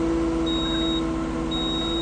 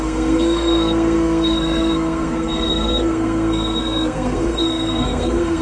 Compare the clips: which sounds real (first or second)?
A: first